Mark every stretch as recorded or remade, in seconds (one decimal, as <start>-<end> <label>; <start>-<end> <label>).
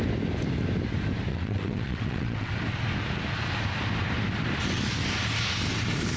0.0-1.3 recorded; 1.3-2.5 remade; 2.5-6.2 recorded